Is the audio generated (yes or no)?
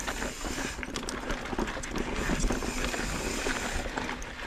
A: no